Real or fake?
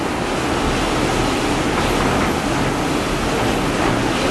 real